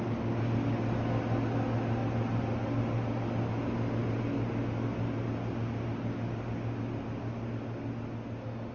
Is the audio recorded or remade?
recorded